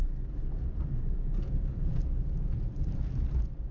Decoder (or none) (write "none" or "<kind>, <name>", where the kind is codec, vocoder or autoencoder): vocoder, BigVGAN v2